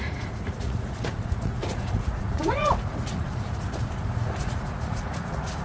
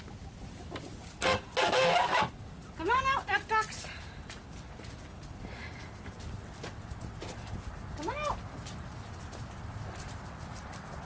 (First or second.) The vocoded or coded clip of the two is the first